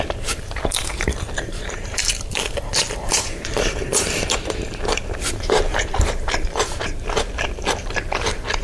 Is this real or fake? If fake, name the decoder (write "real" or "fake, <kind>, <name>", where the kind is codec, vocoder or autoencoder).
fake, vocoder, BigVGAN v2